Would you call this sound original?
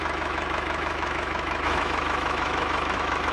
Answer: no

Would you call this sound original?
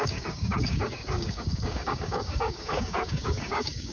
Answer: no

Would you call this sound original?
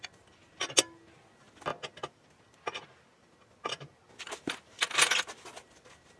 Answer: yes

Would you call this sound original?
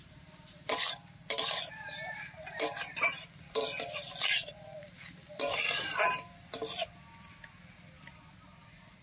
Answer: no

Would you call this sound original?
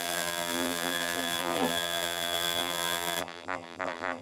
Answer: no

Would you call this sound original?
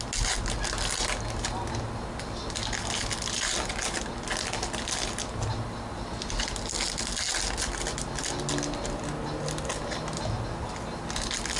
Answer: yes